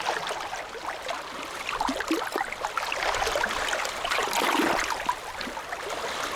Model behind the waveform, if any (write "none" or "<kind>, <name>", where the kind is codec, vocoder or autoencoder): none